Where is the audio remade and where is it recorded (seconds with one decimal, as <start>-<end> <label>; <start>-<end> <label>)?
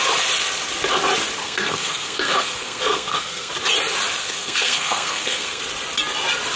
0.0-1.4 recorded; 1.4-3.5 remade; 3.5-4.2 recorded; 4.2-5.6 remade; 5.6-6.6 recorded